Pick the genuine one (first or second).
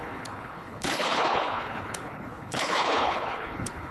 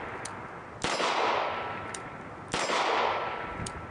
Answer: second